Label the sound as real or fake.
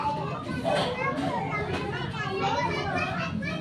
real